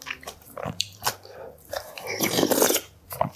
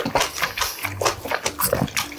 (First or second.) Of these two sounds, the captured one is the second